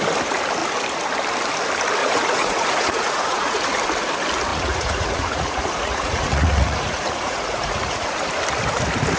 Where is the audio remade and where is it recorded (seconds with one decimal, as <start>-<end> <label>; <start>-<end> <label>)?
0.0-2.0 recorded; 2.0-3.6 remade; 3.6-4.5 recorded; 4.5-8.2 remade; 8.2-9.2 recorded